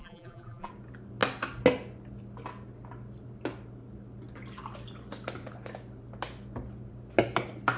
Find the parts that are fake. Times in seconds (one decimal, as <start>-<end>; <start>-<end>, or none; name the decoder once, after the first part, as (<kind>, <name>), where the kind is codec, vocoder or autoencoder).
0.0-0.7 (vocoder, BigVGAN v2)